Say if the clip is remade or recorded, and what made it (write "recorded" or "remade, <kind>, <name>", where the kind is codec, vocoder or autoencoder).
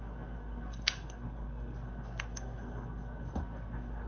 remade, codec, SNAC